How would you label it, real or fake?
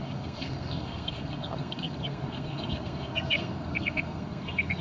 fake